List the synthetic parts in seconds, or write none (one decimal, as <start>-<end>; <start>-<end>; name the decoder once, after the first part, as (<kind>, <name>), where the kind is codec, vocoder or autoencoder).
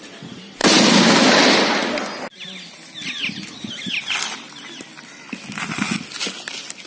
none